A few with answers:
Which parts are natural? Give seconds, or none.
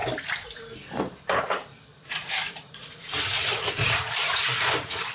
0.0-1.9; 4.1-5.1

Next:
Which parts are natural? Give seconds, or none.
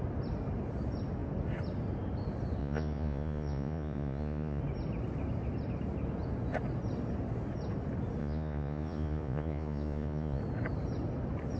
0.0-2.6; 4.6-8.2; 10.4-11.6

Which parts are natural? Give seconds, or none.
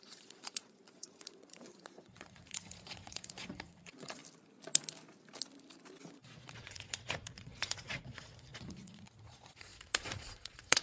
4.2-6.1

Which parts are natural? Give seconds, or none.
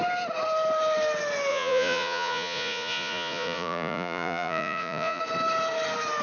0.0-1.5; 5.2-6.2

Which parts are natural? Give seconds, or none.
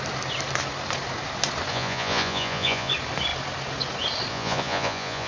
0.0-1.7; 2.9-4.3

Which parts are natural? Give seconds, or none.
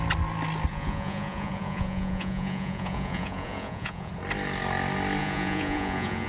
0.0-0.7; 4.1-5.2